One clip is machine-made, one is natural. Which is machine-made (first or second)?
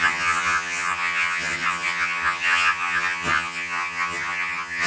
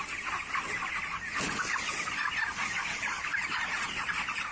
first